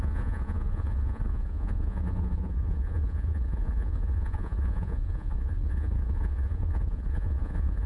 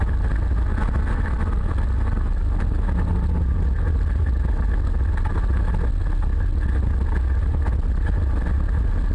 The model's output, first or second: first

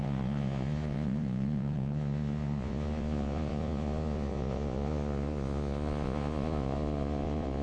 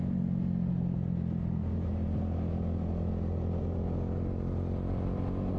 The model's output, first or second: first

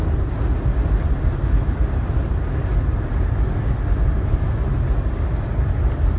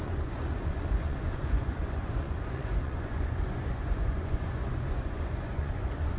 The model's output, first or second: second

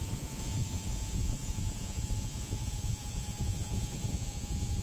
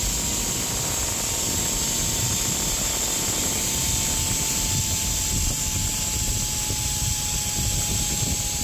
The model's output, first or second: first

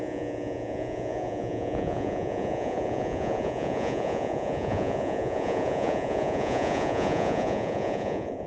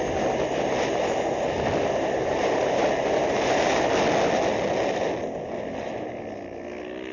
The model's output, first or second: first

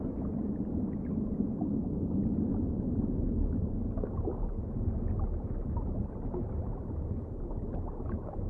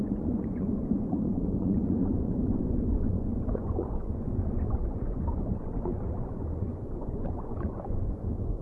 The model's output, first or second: second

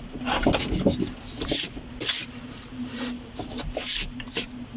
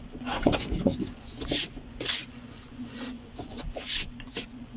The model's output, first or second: second